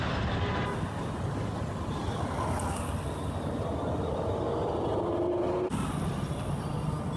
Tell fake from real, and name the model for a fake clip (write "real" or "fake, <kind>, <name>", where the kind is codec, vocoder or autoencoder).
real